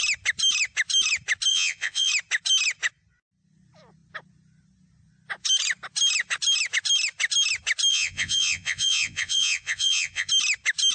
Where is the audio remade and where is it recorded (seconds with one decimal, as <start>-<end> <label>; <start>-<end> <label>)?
0.0-1.5 recorded; 1.5-2.1 remade; 2.1-7.9 recorded; 7.9-10.3 remade; 10.3-10.9 recorded